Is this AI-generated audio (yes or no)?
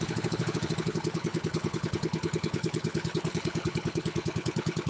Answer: yes